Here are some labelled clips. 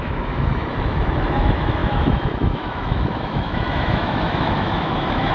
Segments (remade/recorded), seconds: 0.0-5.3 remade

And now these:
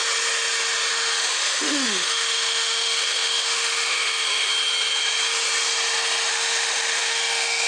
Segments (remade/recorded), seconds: 0.0-0.9 recorded; 0.9-4.5 remade; 4.5-6.3 recorded; 6.3-7.7 remade

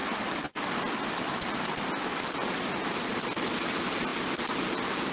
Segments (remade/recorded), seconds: 0.0-1.9 remade; 1.9-4.1 recorded; 4.1-4.6 remade; 4.6-5.1 recorded

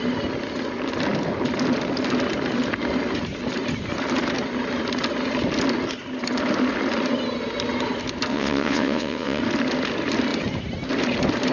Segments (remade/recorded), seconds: 0.0-8.3 recorded; 8.3-9.4 remade; 9.4-11.5 recorded